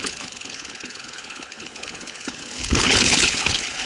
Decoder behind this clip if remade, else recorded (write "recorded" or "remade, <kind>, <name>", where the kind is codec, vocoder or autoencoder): remade, codec, HILCodec